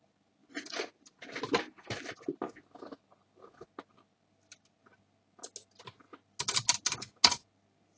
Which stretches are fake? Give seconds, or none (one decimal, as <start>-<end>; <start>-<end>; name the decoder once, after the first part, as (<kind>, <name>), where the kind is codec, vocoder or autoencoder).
none